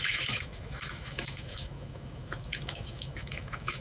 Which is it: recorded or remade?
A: remade